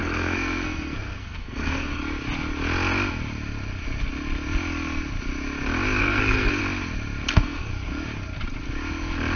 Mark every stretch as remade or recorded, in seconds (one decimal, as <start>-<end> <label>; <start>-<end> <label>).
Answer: 0.0-2.0 remade; 2.0-6.0 recorded; 6.0-6.6 remade; 6.6-7.3 recorded; 7.3-7.7 remade; 7.7-9.4 recorded